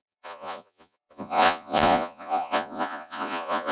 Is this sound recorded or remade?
remade